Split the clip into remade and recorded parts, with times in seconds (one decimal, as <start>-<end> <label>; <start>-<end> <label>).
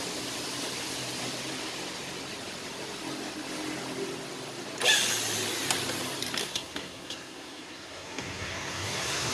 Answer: 0.0-6.4 recorded; 6.4-9.3 remade